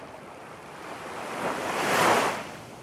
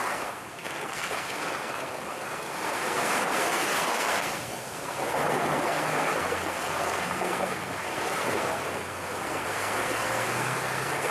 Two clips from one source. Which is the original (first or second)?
first